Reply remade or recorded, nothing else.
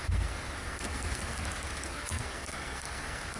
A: remade